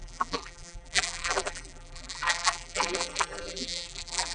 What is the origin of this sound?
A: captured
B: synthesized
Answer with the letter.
B